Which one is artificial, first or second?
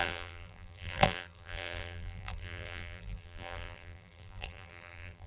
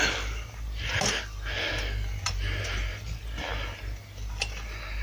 first